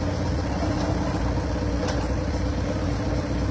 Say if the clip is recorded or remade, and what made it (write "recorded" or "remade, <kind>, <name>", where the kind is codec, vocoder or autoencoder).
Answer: recorded